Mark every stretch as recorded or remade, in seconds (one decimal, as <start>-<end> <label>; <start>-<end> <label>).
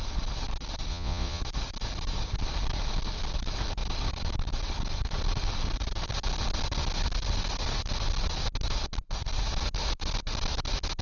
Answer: 0.0-0.9 recorded; 0.9-1.4 remade; 1.4-11.0 recorded